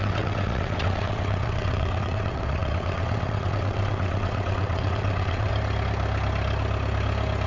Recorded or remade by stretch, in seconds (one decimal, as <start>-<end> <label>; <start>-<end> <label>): 0.0-5.5 remade; 5.5-7.5 recorded